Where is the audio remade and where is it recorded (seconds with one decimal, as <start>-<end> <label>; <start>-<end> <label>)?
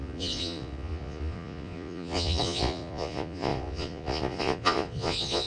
0.0-5.5 remade